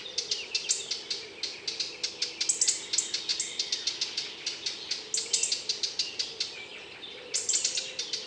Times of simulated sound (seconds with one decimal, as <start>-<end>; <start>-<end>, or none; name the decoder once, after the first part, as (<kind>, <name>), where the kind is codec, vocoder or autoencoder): none

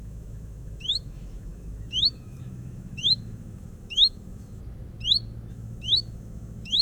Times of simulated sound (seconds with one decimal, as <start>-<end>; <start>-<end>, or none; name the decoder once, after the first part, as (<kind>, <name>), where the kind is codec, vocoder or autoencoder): 0.0-4.6 (autoencoder, DAC-VAE); 5.5-6.8